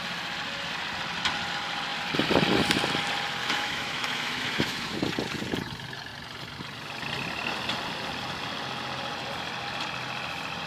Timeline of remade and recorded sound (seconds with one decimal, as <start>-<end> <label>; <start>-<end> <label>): 0.0-3.4 recorded; 3.4-5.0 remade; 5.0-10.7 recorded